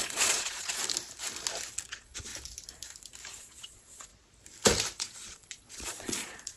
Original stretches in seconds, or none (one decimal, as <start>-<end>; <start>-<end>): 0.8-1.9; 2.3-3.3; 4.1-5.0